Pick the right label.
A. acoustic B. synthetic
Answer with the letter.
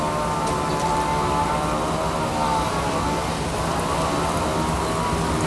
A